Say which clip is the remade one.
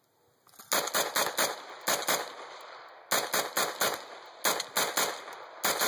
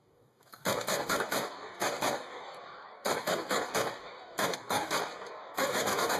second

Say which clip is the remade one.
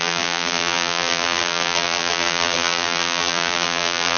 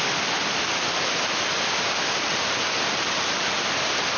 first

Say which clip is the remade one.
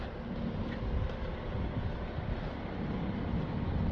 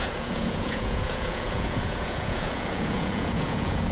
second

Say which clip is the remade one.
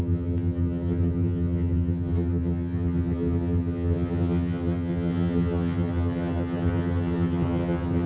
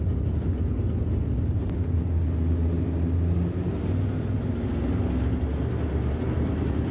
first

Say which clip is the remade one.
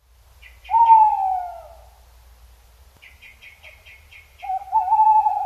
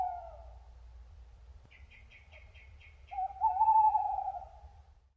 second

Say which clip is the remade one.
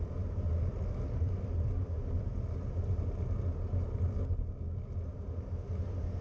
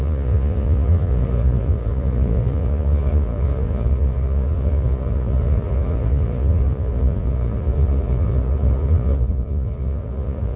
second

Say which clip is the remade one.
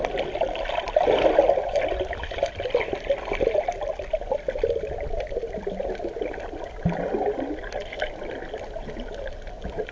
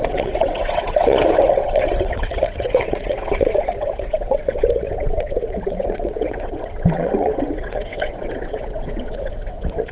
second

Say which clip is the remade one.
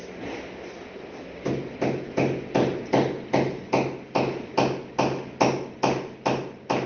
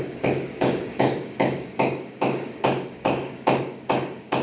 second